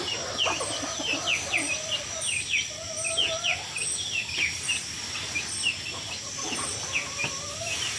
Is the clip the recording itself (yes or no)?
yes